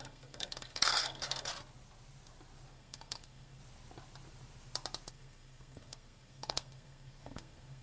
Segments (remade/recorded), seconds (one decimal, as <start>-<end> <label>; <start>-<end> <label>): 0.0-1.5 remade; 1.5-2.7 recorded; 2.7-3.6 remade; 3.6-5.1 recorded; 5.1-7.8 remade